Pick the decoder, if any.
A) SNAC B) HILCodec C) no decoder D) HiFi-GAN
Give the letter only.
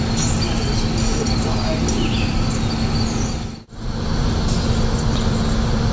C